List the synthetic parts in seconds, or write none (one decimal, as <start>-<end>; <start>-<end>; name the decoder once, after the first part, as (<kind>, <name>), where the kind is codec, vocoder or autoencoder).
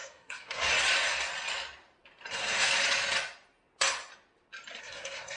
0.0-0.7 (codec, SNAC); 2.3-2.7; 4.8-5.4